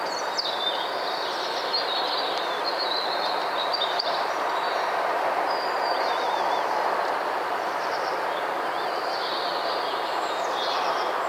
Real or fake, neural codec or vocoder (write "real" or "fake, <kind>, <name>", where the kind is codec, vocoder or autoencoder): real